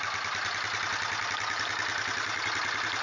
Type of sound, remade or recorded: recorded